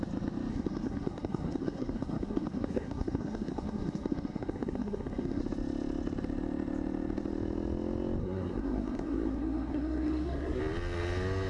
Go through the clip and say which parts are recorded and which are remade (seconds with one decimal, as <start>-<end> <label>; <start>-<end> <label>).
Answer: 0.0-0.5 recorded; 0.5-5.4 remade; 5.4-8.2 recorded; 8.2-10.6 remade; 10.6-11.5 recorded